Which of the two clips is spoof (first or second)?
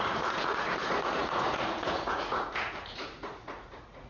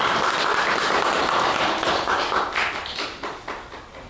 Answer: first